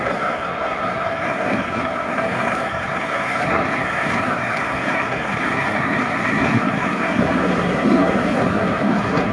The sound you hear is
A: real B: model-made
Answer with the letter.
B